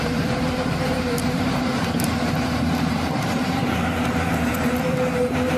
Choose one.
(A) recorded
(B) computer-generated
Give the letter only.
B